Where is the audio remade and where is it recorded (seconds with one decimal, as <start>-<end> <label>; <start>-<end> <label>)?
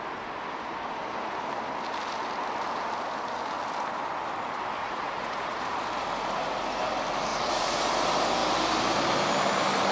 0.0-4.8 recorded; 4.8-5.6 remade; 5.6-7.3 recorded; 7.3-7.8 remade; 7.8-9.9 recorded